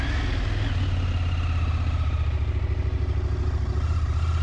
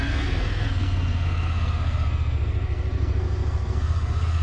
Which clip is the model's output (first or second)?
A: second